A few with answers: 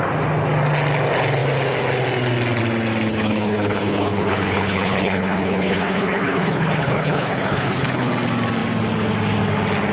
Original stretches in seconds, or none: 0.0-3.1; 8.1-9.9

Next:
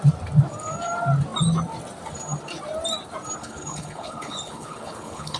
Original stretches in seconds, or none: 0.0-3.4

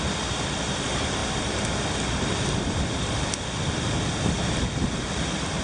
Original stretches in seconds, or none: 0.0-5.6

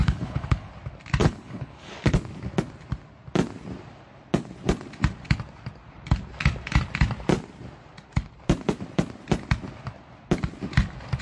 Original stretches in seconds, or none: 0.7-1.2; 1.9-11.2

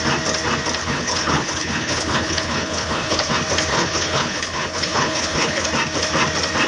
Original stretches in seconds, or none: 0.0-0.8; 3.3-3.7; 5.7-6.7

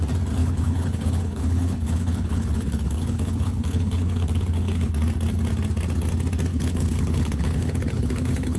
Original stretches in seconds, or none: 0.0-0.4; 4.9-6.5